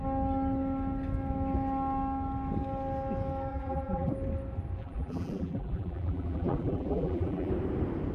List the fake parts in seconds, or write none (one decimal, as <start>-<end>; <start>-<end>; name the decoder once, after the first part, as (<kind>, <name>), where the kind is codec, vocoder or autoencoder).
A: 3.5-4.1 (vocoder, BigVGAN v2); 4.8-7.5